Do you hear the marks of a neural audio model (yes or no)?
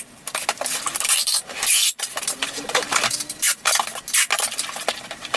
no